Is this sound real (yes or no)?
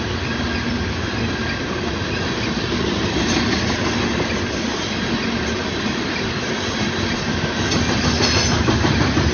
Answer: yes